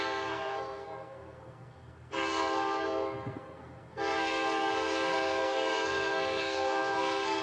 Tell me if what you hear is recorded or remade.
remade